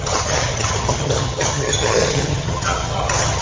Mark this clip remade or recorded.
remade